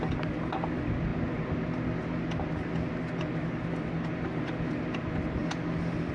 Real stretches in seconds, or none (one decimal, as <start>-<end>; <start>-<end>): 0.0-6.1